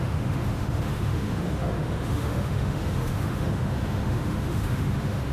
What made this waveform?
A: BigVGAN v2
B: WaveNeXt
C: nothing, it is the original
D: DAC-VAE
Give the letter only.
D